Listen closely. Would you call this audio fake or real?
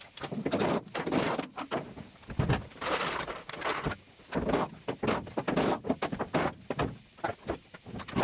real